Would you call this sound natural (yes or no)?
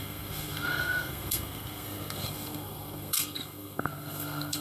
no